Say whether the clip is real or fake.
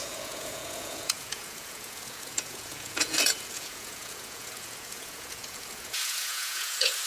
fake